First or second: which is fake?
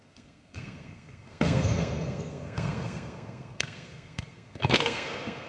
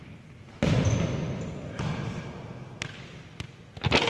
first